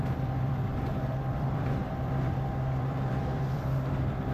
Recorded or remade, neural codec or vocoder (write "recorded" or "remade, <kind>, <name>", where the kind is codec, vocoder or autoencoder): remade, vocoder, BigVGAN v2